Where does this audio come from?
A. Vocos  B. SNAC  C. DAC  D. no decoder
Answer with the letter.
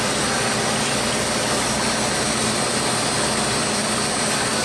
D